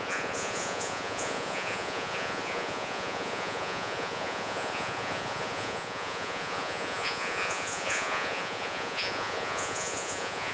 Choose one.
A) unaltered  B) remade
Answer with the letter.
B